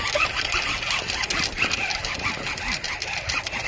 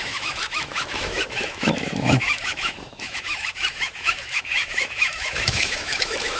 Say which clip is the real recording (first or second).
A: first